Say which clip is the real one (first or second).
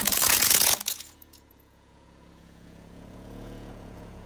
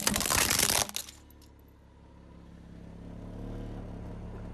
second